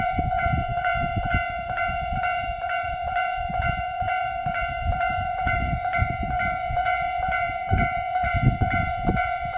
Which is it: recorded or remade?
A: remade